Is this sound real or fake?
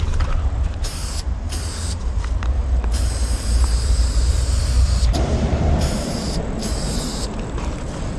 fake